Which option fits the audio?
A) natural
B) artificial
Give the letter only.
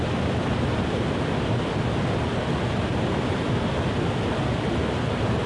A